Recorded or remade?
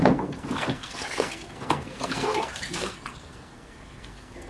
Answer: remade